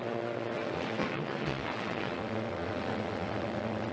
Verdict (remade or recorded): remade